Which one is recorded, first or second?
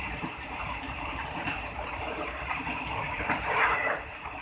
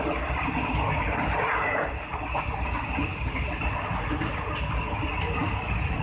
second